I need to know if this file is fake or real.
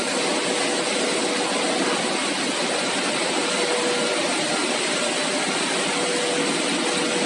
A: real